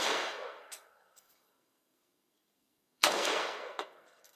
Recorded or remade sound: remade